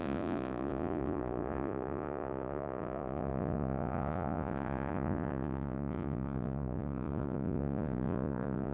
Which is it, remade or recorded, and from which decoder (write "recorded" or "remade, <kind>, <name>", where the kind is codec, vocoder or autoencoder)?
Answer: remade, vocoder, Vocos